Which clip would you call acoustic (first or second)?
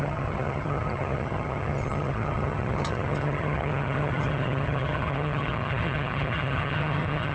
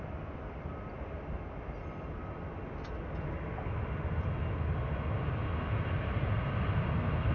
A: second